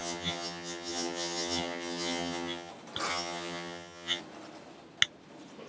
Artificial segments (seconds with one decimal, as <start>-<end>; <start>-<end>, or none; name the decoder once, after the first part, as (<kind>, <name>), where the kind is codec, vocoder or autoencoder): 0.0-2.7 (vocoder, HiFi-GAN); 3.1-4.2